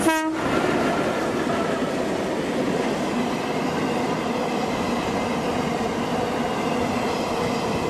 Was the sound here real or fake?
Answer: real